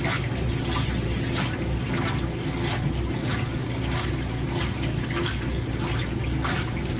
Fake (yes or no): no